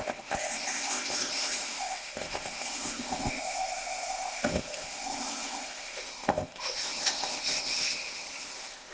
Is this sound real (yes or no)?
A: no